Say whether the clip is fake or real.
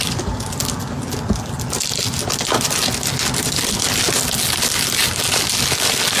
real